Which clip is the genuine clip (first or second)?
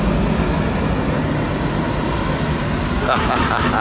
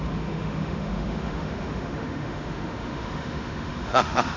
first